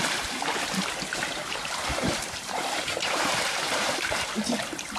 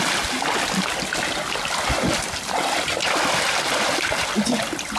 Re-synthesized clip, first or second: first